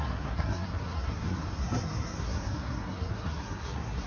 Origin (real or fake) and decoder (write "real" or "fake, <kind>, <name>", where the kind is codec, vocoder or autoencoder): fake, codec, SNAC